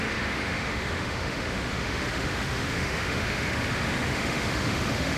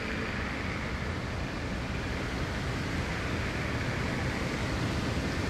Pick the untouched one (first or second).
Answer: second